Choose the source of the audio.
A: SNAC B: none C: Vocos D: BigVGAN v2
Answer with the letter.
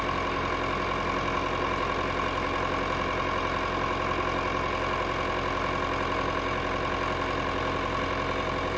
B